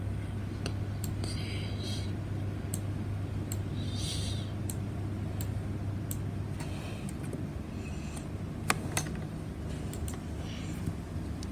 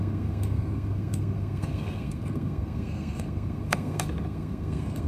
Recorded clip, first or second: first